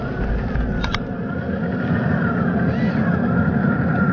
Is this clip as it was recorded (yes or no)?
yes